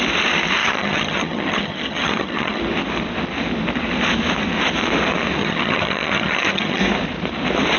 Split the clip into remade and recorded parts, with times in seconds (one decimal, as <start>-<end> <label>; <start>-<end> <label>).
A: 0.0-0.6 recorded; 0.6-2.6 remade; 2.6-5.4 recorded; 5.4-6.8 remade; 6.8-7.8 recorded